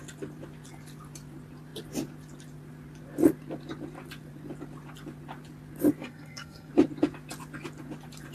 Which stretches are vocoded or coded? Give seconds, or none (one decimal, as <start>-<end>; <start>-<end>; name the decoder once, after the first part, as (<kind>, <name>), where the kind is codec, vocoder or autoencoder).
6.0-6.7 (codec, SNAC)